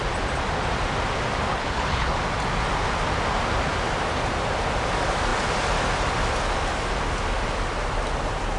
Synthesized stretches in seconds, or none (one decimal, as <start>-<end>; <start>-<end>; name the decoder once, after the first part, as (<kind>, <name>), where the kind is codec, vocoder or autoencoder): 1.5-2.2 (codec, HILCodec)